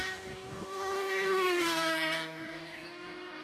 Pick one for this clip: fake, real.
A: fake